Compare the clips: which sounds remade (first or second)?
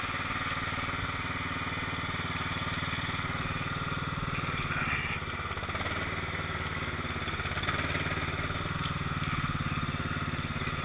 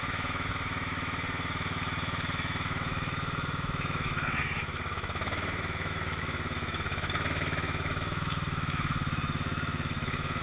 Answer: second